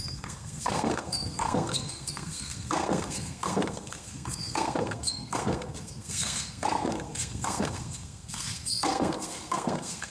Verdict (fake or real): fake